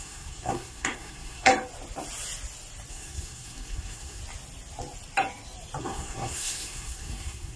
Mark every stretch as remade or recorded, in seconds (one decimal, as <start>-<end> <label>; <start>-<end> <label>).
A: 0.0-1.5 remade; 1.5-2.9 recorded; 2.9-4.2 remade; 4.2-5.8 recorded; 5.8-7.6 remade